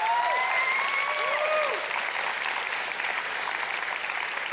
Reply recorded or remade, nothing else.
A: recorded